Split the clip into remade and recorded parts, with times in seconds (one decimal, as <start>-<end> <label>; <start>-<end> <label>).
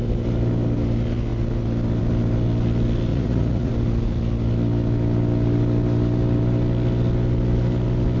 0.0-3.1 recorded; 3.1-3.7 remade; 3.7-8.2 recorded